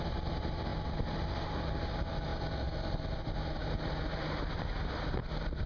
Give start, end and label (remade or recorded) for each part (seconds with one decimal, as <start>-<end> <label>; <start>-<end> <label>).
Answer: 0.0-5.7 recorded